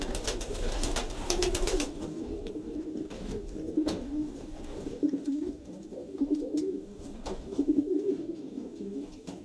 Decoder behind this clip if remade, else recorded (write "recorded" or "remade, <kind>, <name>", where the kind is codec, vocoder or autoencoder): remade, codec, DAC